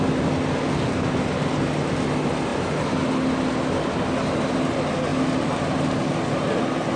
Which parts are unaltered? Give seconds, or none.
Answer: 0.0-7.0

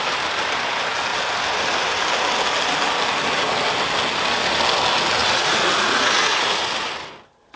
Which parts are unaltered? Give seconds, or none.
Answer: 0.0-5.2; 6.7-7.6

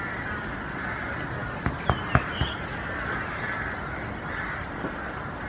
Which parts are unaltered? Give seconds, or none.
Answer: 0.0-5.5

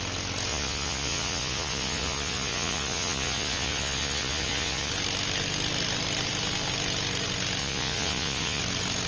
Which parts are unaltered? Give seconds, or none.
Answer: 0.0-0.5; 4.9-7.6; 8.6-9.1

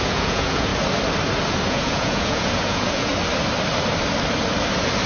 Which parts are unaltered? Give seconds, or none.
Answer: 0.7-1.7; 3.1-5.1

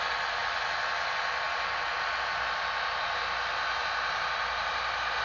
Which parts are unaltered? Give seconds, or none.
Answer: 0.0-5.2